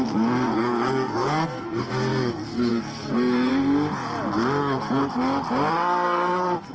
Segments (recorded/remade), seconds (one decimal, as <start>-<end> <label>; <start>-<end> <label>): 0.0-3.5 remade; 3.5-4.6 recorded; 4.6-5.0 remade; 5.0-5.7 recorded; 5.7-6.7 remade